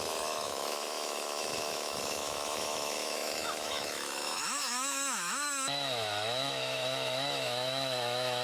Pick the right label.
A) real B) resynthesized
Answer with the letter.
B